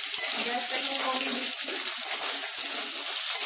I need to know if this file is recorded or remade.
recorded